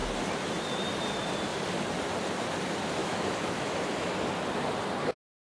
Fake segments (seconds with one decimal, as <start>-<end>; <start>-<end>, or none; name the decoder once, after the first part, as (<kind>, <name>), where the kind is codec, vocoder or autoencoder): 3.0-4.1 (autoencoder, DAC-VAE)